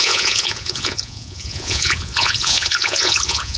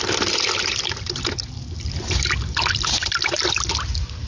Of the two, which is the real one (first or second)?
second